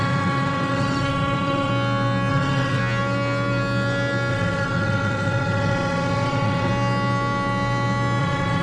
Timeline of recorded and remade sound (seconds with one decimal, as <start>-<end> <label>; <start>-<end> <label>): 0.0-1.7 remade; 1.7-2.3 recorded; 2.3-2.8 remade; 2.8-4.3 recorded; 4.3-6.7 remade; 6.7-8.2 recorded; 8.2-8.6 remade